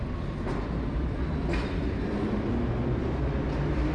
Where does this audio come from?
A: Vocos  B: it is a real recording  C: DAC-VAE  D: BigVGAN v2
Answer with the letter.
B